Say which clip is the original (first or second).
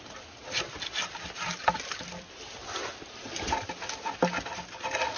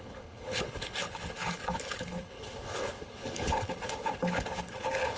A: first